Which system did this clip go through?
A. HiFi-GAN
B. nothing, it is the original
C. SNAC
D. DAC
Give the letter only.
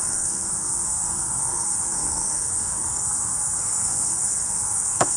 C